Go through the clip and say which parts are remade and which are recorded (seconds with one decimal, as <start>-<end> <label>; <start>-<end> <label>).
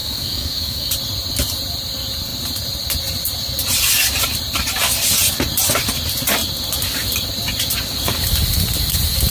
0.0-0.9 remade; 0.9-9.3 recorded